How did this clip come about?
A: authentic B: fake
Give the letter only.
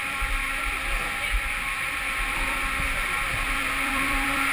B